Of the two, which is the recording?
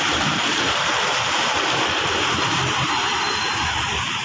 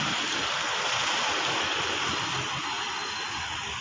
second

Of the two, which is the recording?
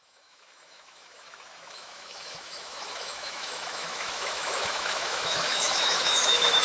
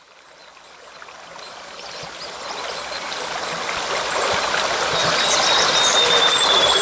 second